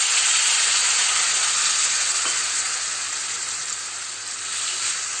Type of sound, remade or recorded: recorded